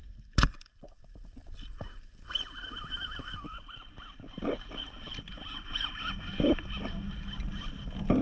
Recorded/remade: recorded